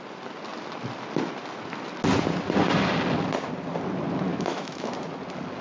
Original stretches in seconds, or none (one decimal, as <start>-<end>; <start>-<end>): 0.0-4.3; 4.9-5.6